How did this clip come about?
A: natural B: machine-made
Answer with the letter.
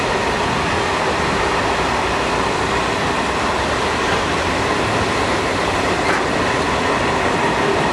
A